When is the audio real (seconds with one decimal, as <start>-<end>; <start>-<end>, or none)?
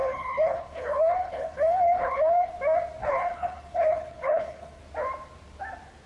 2.5-3.0; 4.8-6.1